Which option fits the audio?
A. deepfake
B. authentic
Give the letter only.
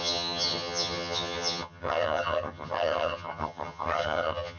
A